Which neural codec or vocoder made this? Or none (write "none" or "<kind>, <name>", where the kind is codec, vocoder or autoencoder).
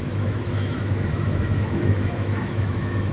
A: autoencoder, DAC-VAE